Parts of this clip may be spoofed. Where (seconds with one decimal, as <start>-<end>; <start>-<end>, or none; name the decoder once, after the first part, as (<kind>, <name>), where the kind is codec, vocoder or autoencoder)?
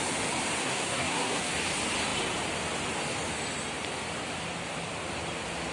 0.6-1.5 (codec, SNAC)